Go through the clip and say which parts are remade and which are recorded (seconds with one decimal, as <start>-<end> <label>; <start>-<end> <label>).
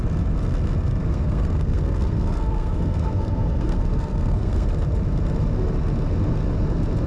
0.0-1.0 recorded; 1.0-4.7 remade; 4.7-7.1 recorded